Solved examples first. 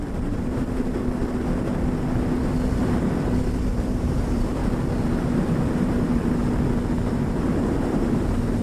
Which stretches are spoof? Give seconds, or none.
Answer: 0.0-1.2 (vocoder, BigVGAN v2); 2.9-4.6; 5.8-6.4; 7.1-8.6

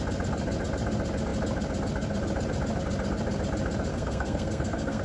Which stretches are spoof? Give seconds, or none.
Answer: 3.9-5.0 (codec, SNAC)

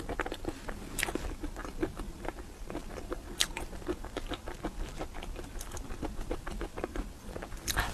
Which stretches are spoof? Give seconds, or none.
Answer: 1.6-2.3 (vocoder, BigVGAN v2); 2.8-3.8